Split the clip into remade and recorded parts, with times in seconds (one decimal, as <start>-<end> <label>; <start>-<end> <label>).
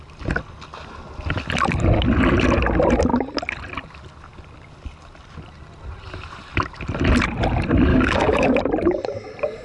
0.0-7.9 recorded; 7.9-8.6 remade; 8.6-9.6 recorded